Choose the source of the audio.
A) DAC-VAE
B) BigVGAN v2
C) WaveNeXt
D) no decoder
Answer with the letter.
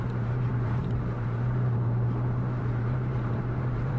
B